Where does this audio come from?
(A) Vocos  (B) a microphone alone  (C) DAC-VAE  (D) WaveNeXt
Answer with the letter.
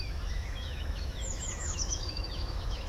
C